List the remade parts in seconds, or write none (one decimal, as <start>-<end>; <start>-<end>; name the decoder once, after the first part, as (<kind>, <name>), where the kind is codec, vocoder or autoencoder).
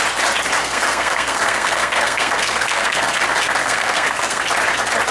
0.6-3.2 (codec, SNAC); 3.6-4.4